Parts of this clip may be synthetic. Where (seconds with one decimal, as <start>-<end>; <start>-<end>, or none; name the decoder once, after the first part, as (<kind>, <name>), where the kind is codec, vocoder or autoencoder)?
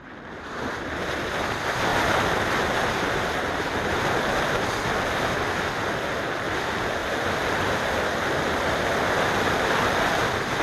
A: none